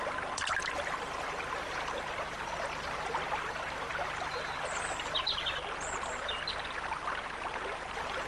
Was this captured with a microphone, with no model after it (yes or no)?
no